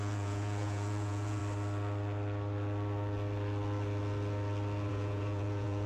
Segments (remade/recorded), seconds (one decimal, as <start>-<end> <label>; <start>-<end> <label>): 0.0-1.4 remade; 1.4-4.9 recorded; 4.9-5.9 remade